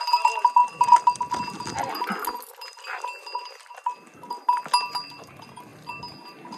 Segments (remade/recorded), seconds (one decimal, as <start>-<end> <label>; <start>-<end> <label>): 0.0-6.6 recorded